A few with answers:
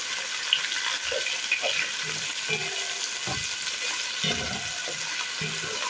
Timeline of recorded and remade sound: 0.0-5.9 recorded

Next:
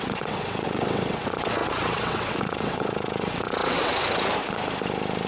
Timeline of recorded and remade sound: 0.0-4.0 remade; 4.0-5.3 recorded

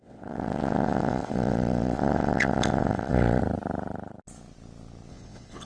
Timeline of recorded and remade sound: 0.0-3.4 remade; 3.4-5.1 recorded; 5.1-5.7 remade

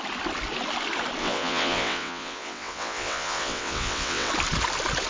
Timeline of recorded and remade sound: 0.0-1.2 recorded; 1.2-4.3 remade; 4.3-5.1 recorded

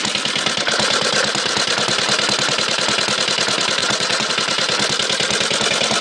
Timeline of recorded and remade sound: 0.0-3.8 recorded; 3.8-4.3 remade; 4.3-6.0 recorded

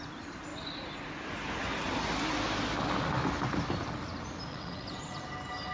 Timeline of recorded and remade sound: 0.0-4.5 recorded; 4.5-5.2 remade; 5.2-5.7 recorded

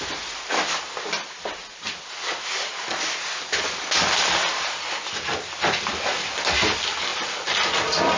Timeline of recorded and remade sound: 0.0-8.2 recorded